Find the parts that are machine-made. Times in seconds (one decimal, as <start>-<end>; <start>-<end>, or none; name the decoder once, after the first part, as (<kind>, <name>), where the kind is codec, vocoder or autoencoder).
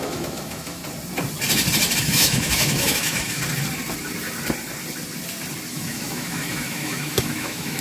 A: 0.0-0.8 (autoencoder, DAC-VAE); 2.0-3.4; 5.7-7.8